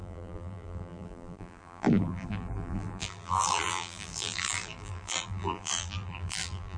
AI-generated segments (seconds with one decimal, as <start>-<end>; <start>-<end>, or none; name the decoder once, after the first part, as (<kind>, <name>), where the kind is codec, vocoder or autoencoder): 0.0-6.8 (vocoder, BigVGAN v2)